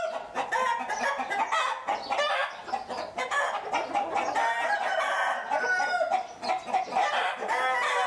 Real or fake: real